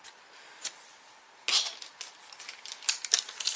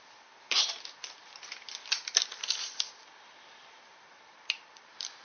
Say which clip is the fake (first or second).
second